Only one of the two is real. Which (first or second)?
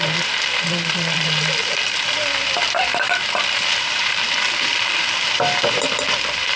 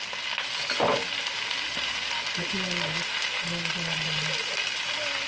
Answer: second